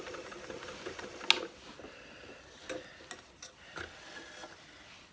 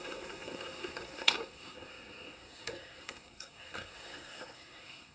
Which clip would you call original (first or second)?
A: first